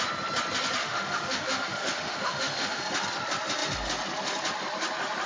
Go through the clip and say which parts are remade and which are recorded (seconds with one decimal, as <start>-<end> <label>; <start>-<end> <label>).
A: 0.0-0.8 recorded; 0.8-2.8 remade; 2.8-5.3 recorded